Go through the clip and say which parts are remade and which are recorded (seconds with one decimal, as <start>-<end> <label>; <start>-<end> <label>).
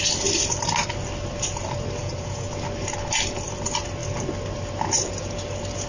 0.0-2.0 recorded; 2.0-2.5 remade; 2.5-5.9 recorded